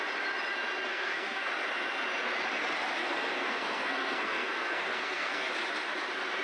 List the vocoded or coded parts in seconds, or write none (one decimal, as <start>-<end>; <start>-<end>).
0.9-1.5; 3.0-5.5